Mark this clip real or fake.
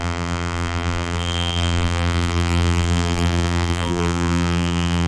fake